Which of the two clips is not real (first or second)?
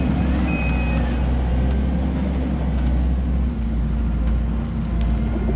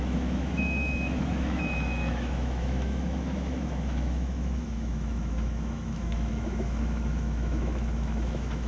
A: second